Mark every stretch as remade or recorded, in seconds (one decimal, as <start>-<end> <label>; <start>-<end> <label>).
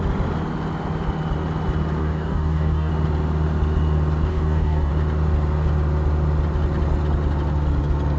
0.0-2.0 recorded; 2.0-2.9 remade; 2.9-4.3 recorded; 4.3-4.9 remade; 4.9-8.2 recorded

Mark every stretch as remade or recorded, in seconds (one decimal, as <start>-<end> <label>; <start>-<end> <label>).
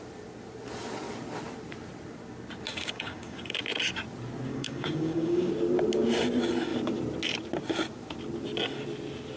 0.0-2.7 recorded; 2.7-3.6 remade; 3.6-4.5 recorded; 4.5-5.5 remade; 5.5-9.4 recorded